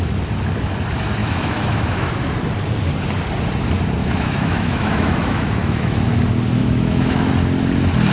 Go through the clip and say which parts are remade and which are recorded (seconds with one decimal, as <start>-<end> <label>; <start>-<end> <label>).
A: 0.0-1.2 recorded; 1.2-2.1 remade; 2.1-4.0 recorded; 4.0-6.0 remade; 6.0-6.6 recorded; 6.6-7.3 remade; 7.3-8.1 recorded